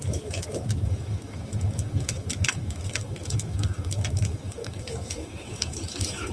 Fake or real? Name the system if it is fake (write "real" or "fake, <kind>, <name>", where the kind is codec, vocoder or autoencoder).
fake, autoencoder, DAC-VAE